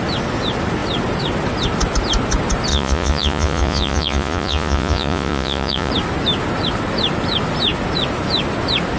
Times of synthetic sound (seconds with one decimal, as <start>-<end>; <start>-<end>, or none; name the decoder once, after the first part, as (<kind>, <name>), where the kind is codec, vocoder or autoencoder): 2.7-5.9 (vocoder, Vocos)